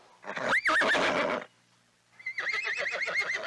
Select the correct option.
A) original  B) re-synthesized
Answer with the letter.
A